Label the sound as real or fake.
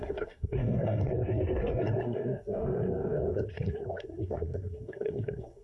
fake